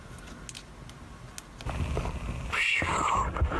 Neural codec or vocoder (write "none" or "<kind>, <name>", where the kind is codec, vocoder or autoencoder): none